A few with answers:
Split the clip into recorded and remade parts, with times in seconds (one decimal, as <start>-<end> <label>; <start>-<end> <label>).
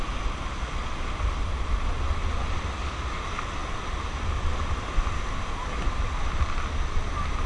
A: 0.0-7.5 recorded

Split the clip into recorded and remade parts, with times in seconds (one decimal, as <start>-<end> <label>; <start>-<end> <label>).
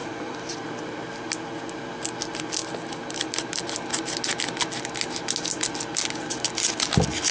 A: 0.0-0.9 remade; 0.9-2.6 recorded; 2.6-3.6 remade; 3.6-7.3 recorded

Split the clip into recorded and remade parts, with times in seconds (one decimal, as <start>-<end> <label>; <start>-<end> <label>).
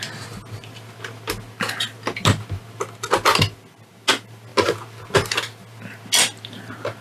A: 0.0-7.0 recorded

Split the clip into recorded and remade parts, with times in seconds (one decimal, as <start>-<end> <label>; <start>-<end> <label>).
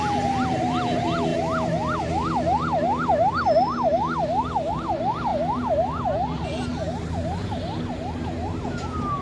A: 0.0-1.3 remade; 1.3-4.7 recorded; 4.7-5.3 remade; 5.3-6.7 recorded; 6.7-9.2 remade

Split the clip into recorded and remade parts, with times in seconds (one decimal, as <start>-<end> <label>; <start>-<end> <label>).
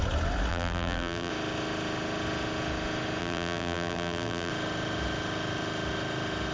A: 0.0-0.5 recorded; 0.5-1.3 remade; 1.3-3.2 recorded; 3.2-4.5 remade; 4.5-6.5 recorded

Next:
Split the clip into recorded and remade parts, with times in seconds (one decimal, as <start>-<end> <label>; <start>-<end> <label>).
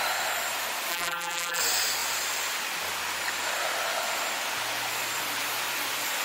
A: 0.0-0.9 recorded; 0.9-1.6 remade; 1.6-6.2 recorded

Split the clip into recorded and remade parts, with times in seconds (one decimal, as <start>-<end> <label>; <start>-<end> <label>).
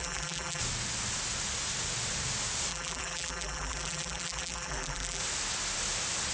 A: 0.0-0.6 remade; 0.6-2.7 recorded; 2.7-5.2 remade; 5.2-6.3 recorded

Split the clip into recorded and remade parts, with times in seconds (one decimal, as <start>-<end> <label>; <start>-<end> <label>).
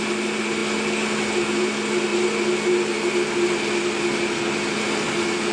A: 0.0-5.5 recorded